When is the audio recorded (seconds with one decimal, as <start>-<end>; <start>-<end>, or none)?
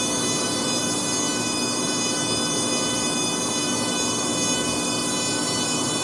none